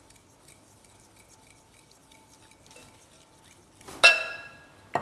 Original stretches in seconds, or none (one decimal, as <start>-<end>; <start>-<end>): 0.0-5.0